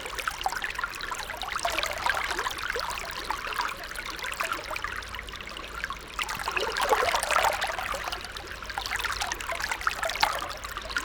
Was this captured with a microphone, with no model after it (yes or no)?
yes